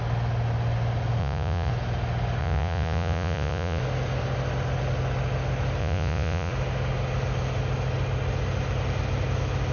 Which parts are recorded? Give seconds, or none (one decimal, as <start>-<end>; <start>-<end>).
0.0-1.2; 1.7-2.4; 3.8-5.8; 6.5-9.7